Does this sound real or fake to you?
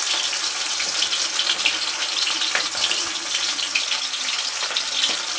fake